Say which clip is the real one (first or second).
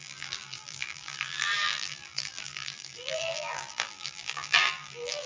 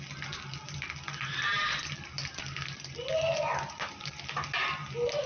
second